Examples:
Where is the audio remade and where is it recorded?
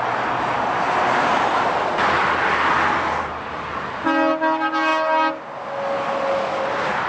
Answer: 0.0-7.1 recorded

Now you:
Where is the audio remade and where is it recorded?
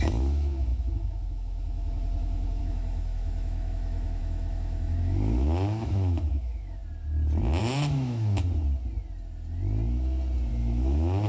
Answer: 0.0-6.8 remade; 6.8-7.6 recorded; 7.6-8.4 remade; 8.4-10.5 recorded; 10.5-11.3 remade